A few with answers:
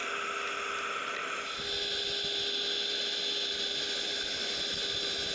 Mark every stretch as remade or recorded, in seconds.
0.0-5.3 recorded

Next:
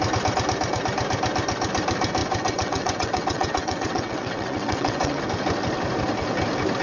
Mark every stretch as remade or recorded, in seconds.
0.0-2.2 recorded; 2.2-5.2 remade; 5.2-6.8 recorded